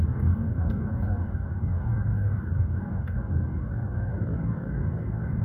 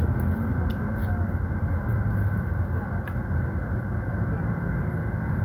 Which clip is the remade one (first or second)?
first